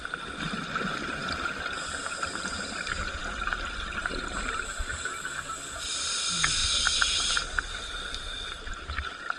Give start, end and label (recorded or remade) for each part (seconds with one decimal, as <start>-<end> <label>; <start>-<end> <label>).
0.0-9.4 recorded